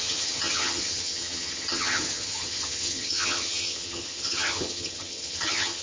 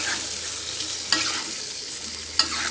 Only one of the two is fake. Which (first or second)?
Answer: first